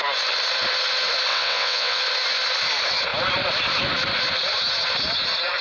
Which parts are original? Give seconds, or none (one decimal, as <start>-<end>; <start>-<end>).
0.0-1.3; 2.0-5.6